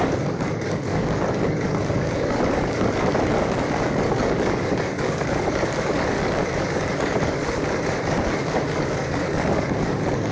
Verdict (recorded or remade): remade